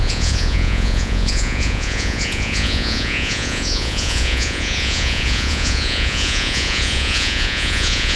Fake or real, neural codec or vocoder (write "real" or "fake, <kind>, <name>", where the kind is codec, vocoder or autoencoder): fake, vocoder, Vocos